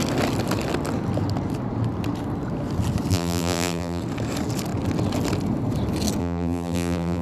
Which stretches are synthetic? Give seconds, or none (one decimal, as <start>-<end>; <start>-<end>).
3.1-4.0; 6.2-7.2